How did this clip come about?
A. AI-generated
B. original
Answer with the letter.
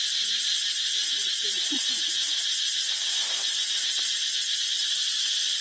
A